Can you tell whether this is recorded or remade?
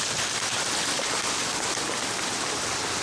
recorded